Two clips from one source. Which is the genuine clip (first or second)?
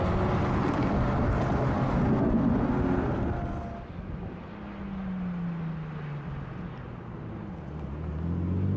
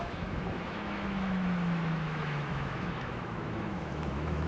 first